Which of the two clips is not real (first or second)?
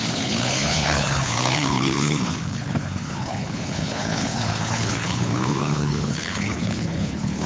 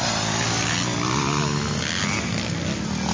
first